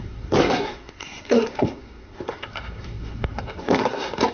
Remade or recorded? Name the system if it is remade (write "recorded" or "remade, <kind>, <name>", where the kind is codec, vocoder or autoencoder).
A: remade, codec, SNAC